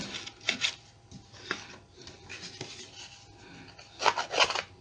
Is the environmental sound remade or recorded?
recorded